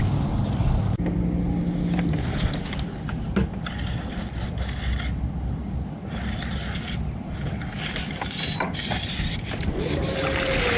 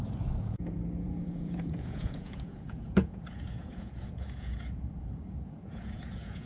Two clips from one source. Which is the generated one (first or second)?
second